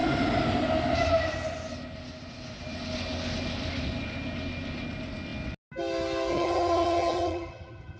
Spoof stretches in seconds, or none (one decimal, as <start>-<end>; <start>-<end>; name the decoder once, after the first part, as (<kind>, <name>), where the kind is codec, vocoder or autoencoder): 6.3-8.0 (vocoder, HiFi-GAN)